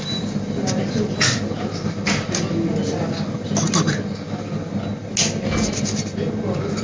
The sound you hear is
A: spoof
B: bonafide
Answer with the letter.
B